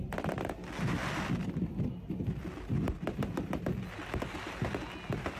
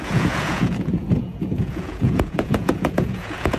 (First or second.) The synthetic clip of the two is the second